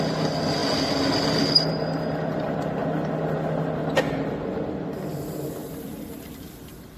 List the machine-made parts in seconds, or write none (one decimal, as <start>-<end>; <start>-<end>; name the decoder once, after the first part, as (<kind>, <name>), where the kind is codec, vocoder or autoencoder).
none